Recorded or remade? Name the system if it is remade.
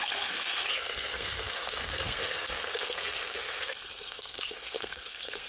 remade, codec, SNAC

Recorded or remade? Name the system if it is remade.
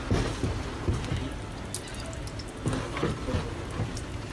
recorded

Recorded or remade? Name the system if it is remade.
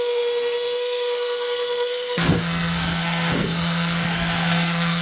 remade, codec, SNAC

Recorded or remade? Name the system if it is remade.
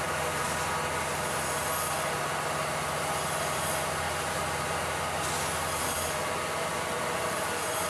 recorded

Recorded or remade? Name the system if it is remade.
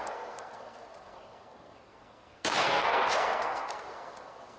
remade, codec, SNAC